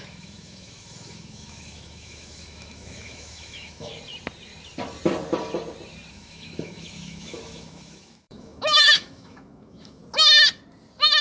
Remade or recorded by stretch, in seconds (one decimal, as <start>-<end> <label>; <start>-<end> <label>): 0.0-3.9 remade; 3.9-6.1 recorded; 6.1-10.0 remade; 10.0-11.2 recorded